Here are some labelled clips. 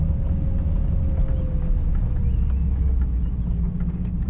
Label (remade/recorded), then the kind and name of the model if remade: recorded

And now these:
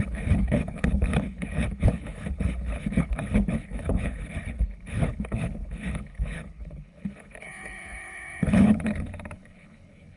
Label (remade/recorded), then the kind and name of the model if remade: remade, codec, HILCodec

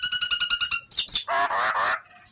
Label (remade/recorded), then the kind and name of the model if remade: recorded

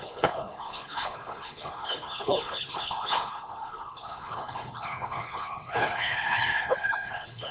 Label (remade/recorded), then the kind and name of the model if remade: remade, codec, HILCodec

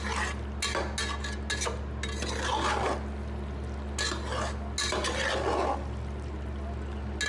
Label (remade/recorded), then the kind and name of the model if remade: recorded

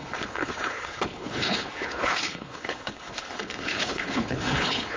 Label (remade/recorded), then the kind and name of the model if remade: remade, codec, HILCodec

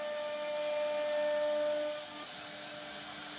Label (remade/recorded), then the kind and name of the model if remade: recorded